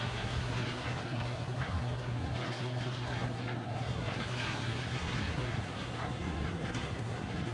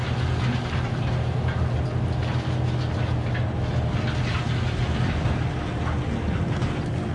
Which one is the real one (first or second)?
second